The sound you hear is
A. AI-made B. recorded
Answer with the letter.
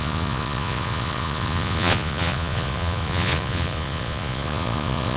A